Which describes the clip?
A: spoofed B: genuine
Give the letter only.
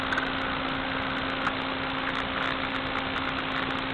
B